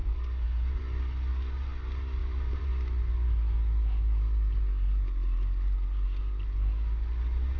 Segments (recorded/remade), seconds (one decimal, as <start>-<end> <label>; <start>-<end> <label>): 0.0-0.8 remade; 0.8-2.2 recorded; 2.2-2.7 remade; 2.7-7.6 recorded